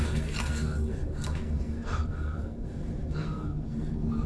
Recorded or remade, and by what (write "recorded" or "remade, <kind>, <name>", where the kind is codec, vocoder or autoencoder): remade, codec, SNAC